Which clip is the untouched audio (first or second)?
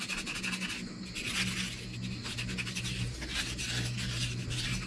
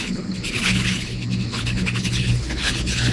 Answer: first